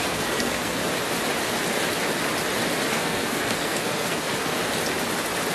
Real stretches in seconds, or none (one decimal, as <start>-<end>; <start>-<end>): 0.8-2.9; 4.6-5.5